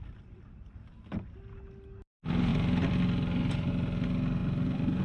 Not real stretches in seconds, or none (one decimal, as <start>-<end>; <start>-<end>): 4.4-5.0